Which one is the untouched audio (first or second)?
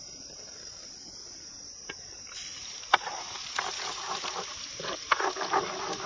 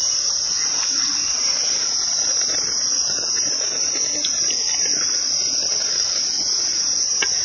second